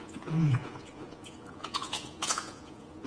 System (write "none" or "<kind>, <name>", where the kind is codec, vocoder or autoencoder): vocoder, Vocos